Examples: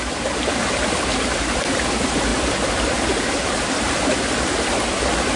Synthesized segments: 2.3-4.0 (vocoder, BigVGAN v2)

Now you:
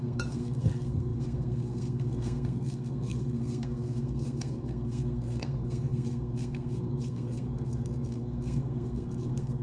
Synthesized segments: 0.0-9.6 (codec, SNAC)

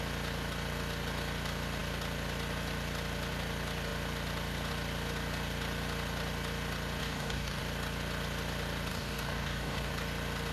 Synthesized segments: 7.0-7.6 (codec, DAC); 8.9-9.9

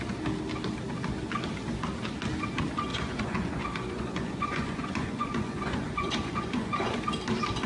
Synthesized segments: 2.9-7.0 (vocoder, Vocos)

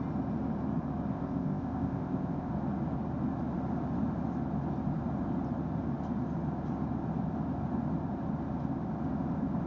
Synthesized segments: 1.1-2.5 (codec, ZipCodec)